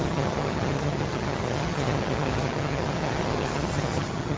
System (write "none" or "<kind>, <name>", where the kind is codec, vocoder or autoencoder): vocoder, HiFi-GAN